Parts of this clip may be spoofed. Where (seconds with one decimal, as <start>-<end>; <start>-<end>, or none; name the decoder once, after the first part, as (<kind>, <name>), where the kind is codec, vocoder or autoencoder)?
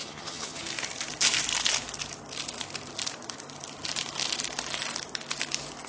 0.0-0.6 (vocoder, HiFi-GAN)